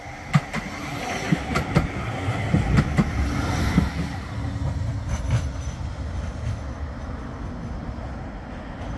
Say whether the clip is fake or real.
real